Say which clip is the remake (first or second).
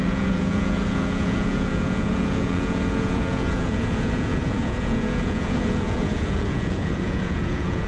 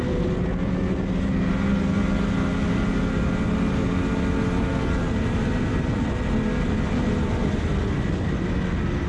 first